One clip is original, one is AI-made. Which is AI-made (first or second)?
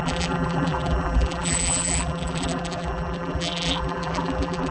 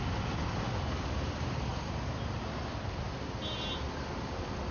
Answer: first